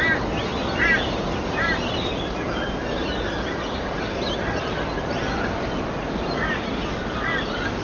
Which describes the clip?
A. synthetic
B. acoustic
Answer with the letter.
B